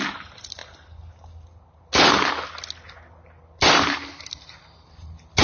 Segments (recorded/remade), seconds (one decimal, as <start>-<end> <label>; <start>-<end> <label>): 0.0-5.4 recorded